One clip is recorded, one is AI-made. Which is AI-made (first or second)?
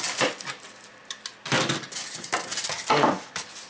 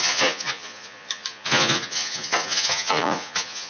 second